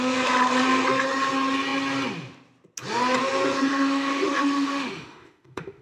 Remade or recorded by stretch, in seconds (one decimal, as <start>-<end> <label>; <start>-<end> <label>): 0.0-3.7 recorded; 3.7-5.8 remade